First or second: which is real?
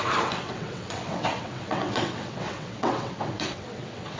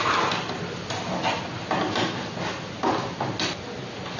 second